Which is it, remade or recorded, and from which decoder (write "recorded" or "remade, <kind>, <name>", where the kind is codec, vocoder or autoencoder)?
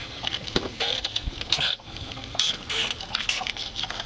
remade, codec, SNAC